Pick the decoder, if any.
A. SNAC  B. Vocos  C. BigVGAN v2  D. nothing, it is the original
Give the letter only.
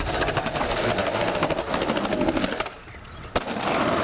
D